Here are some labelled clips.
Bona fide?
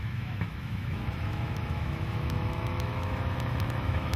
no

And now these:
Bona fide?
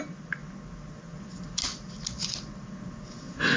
yes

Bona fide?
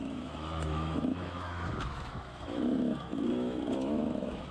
no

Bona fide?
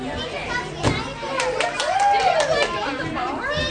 yes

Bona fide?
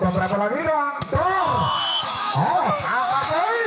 no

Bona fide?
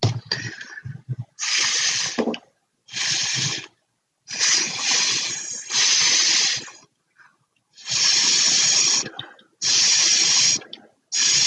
yes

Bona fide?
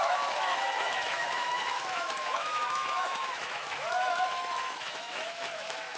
no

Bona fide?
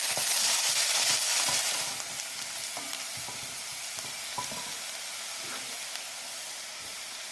yes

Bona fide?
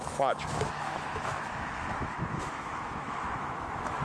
no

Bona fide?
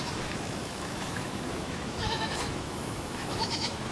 no